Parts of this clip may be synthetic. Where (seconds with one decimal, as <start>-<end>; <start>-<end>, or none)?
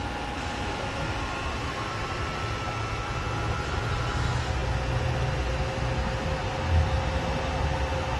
none